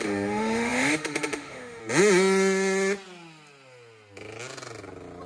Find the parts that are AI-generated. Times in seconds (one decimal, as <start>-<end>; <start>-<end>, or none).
0.0-1.8